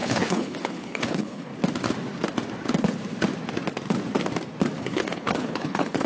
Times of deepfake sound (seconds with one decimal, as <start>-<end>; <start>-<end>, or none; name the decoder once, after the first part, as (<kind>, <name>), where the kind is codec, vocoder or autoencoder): 0.0-1.5 (codec, HILCodec); 4.8-6.1